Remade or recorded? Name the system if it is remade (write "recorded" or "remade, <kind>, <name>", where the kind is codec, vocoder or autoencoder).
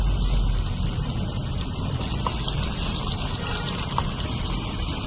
recorded